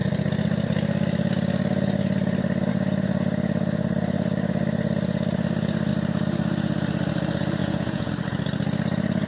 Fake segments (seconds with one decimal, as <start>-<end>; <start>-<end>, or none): 7.6-8.1